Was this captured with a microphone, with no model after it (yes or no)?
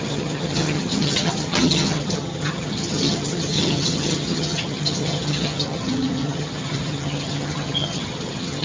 no